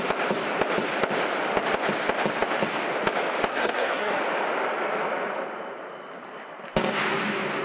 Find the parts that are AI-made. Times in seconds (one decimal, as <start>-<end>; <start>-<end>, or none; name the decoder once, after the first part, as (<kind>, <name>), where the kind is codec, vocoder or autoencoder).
3.5-4.2 (codec, SNAC)